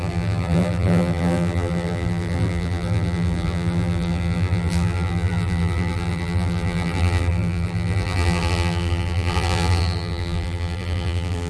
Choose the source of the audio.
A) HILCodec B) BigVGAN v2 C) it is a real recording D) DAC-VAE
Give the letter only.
B